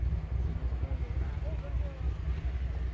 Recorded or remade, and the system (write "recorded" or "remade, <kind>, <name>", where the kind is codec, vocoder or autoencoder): recorded